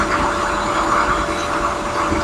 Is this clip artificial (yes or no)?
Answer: no